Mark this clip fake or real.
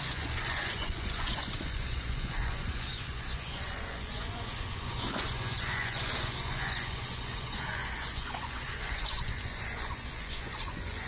fake